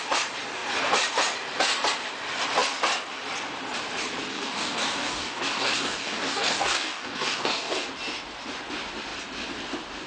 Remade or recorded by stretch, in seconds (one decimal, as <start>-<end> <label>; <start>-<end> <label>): 0.0-4.3 recorded; 4.3-7.9 remade; 7.9-10.1 recorded